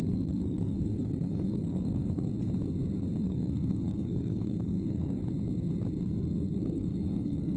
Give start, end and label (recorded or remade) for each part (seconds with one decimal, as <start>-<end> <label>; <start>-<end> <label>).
0.0-2.3 remade; 2.3-3.2 recorded; 3.2-5.2 remade; 5.2-6.0 recorded; 6.0-7.6 remade